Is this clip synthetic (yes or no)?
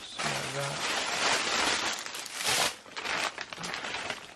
yes